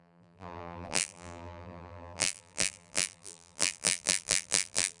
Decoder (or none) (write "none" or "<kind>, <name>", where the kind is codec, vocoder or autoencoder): vocoder, BigVGAN v2